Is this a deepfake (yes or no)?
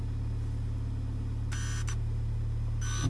no